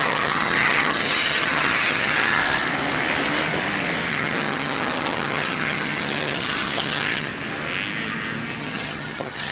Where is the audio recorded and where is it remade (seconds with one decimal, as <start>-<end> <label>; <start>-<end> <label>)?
0.0-2.4 remade; 2.4-4.1 recorded; 4.1-7.3 remade; 7.3-8.6 recorded; 8.6-9.5 remade